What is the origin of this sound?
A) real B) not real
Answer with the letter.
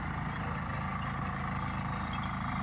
A